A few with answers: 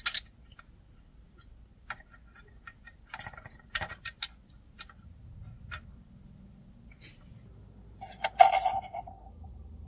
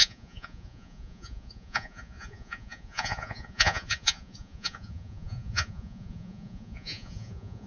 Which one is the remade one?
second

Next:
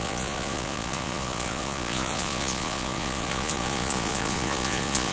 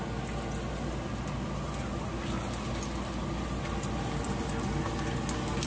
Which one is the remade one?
first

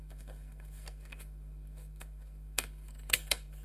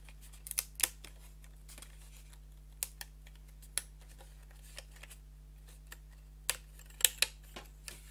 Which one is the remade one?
first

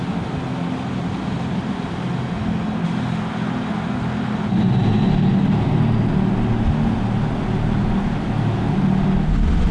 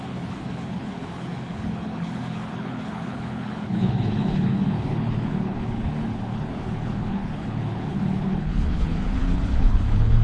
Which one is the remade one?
second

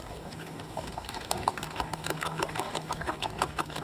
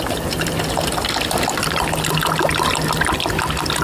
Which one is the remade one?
first